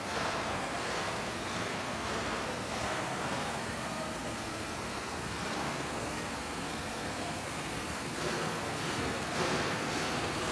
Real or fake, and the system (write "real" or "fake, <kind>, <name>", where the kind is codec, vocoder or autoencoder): fake, codec, SNAC